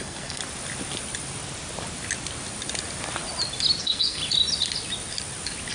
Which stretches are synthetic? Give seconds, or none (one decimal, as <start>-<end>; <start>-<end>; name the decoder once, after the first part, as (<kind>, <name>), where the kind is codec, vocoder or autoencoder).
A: 0.0-0.4 (codec, SNAC); 3.8-4.2